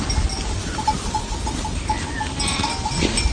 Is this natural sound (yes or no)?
yes